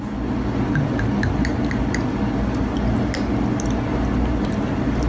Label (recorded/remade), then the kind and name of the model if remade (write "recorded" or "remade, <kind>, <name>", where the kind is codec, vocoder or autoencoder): recorded